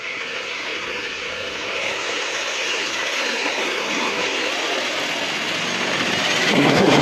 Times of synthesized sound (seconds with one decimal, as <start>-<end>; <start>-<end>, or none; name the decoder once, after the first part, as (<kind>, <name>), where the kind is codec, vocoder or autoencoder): 0.0-4.5 (codec, SNAC); 6.5-7.0

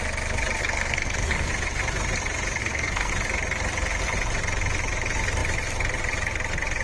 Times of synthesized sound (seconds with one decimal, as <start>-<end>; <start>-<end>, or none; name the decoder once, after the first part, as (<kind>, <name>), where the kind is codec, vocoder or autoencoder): 0.6-1.5 (codec, SNAC); 2.6-3.1

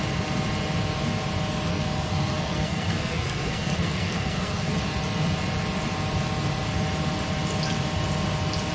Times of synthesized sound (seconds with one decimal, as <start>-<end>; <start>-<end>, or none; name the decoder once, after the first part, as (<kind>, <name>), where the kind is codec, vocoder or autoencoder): 1.7-4.7 (codec, SNAC)

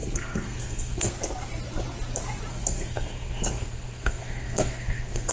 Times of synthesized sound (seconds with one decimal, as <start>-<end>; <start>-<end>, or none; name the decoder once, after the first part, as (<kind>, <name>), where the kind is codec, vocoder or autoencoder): 0.0-1.1 (codec, SNAC); 2.5-5.3

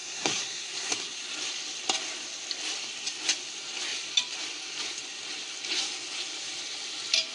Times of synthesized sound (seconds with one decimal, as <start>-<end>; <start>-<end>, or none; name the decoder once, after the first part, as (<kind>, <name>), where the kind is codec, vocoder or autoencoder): 0.0-1.2 (codec, SNAC)

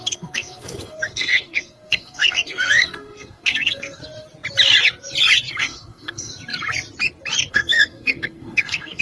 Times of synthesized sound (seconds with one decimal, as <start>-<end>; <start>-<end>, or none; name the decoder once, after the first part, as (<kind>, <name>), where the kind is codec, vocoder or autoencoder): 0.0-4.0 (codec, SNAC); 5.6-6.3; 7.5-9.0

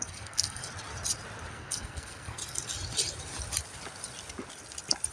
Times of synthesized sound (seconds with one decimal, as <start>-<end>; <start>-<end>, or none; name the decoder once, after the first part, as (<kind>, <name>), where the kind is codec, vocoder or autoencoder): 0.0-0.6 (codec, SNAC); 1.5-2.4